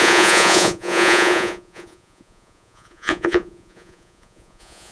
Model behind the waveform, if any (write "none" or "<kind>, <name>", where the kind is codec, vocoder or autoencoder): vocoder, Vocos